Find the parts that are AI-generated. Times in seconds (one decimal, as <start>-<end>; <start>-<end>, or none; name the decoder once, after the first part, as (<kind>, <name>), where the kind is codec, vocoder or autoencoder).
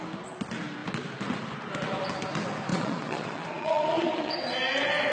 2.7-4.3 (vocoder, Vocos)